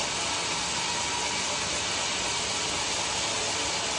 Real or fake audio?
real